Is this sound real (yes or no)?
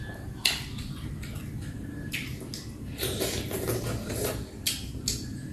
yes